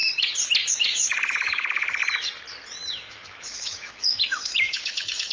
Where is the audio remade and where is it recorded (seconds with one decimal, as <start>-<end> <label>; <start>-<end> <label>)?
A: 0.0-0.7 recorded; 0.7-2.0 remade; 2.0-2.9 recorded; 2.9-5.3 remade